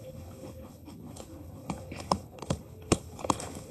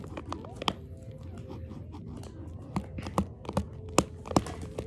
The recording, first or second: second